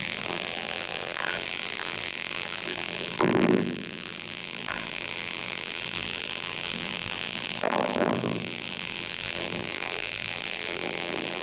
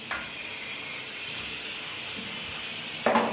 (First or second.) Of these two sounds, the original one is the second